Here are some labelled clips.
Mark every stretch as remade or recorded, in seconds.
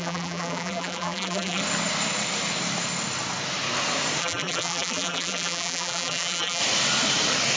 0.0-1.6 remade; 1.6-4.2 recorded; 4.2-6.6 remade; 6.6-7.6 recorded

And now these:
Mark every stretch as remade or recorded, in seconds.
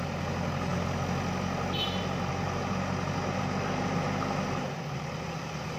0.0-5.8 recorded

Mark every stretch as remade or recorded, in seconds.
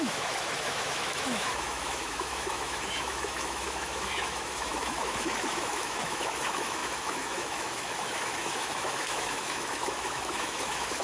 0.0-11.0 remade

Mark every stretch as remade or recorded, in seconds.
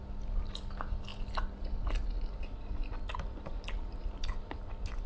0.0-5.1 recorded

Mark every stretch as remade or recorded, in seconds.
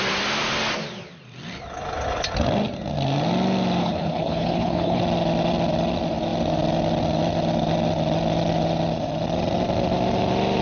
0.0-3.8 recorded; 3.8-5.0 remade; 5.0-10.6 recorded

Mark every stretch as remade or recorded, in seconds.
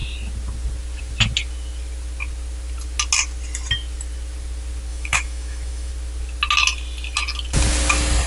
0.0-4.9 recorded; 4.9-5.9 remade; 5.9-8.3 recorded